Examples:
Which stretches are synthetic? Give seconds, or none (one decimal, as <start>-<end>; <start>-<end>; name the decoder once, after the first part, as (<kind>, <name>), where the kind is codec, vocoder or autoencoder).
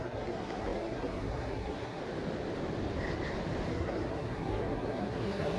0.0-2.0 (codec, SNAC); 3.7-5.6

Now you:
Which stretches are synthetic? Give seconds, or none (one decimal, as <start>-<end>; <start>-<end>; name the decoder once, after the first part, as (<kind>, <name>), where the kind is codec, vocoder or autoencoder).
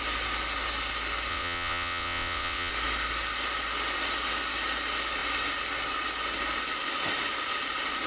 1.3-2.7 (vocoder, WaveNeXt)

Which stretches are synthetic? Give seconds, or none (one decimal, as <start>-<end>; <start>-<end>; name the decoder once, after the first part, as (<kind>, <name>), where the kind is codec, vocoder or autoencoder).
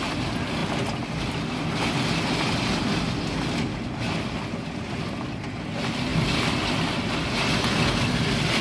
none